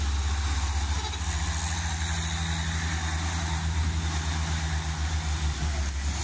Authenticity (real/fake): real